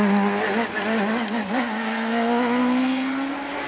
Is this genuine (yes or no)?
yes